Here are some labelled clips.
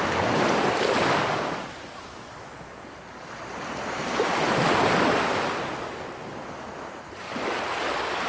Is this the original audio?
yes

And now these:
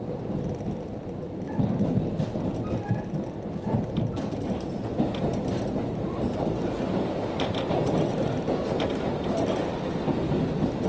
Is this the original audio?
yes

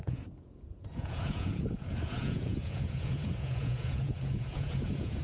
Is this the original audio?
no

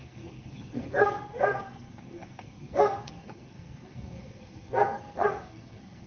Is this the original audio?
no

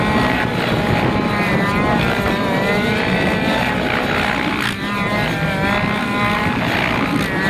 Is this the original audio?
yes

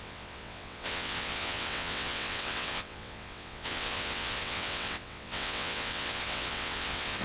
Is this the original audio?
no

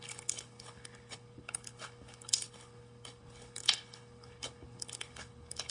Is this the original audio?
no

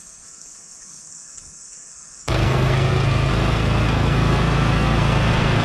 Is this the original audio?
no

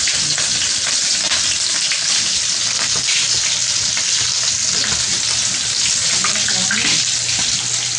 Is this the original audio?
yes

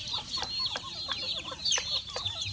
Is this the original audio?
yes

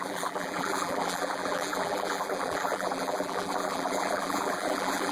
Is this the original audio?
no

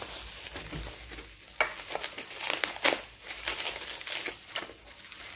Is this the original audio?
yes